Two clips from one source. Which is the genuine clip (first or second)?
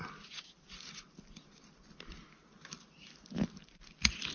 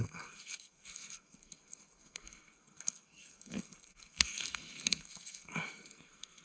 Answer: first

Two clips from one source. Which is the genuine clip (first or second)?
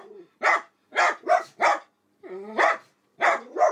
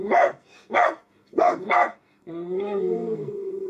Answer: first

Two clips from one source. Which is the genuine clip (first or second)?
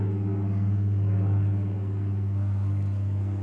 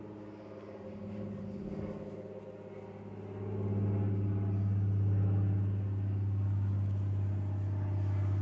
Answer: second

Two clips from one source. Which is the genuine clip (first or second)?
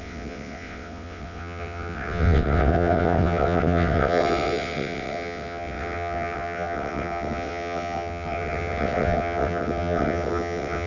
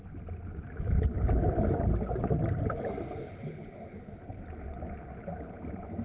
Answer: second